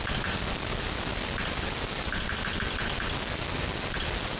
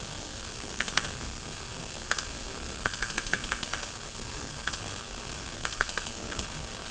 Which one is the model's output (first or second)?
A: second